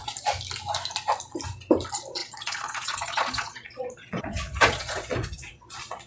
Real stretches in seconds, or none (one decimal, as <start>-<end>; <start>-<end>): 0.0-2.2